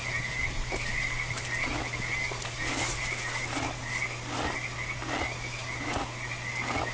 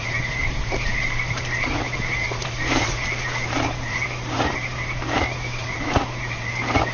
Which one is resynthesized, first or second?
second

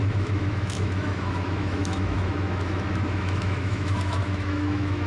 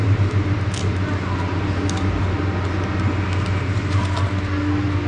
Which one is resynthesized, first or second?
first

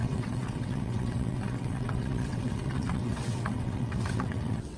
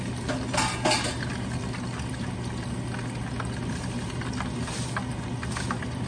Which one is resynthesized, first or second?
first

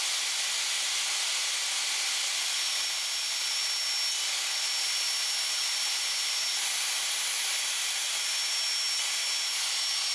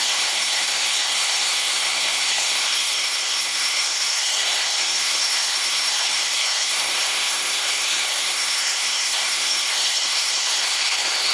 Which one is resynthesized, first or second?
second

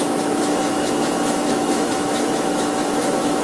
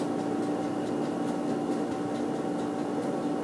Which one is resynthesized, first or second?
first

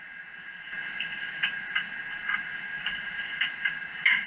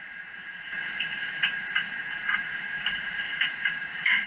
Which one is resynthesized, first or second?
second